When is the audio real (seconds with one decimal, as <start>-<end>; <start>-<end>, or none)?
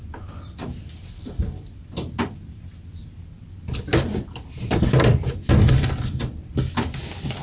0.0-7.4